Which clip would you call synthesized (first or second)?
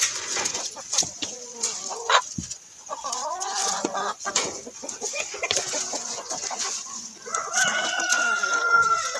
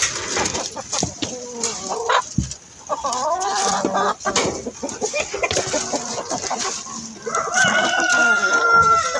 first